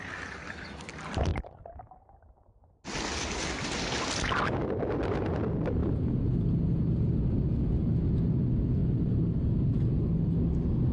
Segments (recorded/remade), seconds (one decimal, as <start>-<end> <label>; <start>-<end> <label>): 0.0-5.8 recorded; 5.8-6.3 remade; 6.3-8.8 recorded; 8.8-10.0 remade; 10.0-10.9 recorded